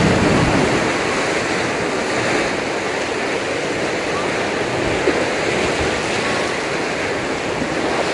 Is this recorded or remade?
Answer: recorded